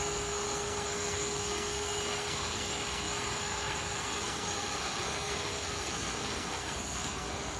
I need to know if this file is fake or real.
fake